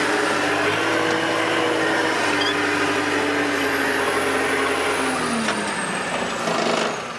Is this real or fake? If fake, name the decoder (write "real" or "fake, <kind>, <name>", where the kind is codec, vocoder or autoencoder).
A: real